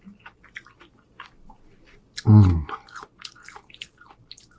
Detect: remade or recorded recorded